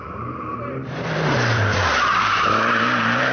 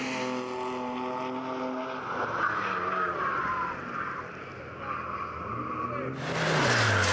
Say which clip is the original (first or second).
second